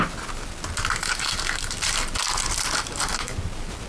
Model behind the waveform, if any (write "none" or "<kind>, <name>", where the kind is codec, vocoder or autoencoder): none